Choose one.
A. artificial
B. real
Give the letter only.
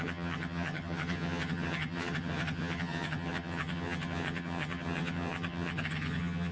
A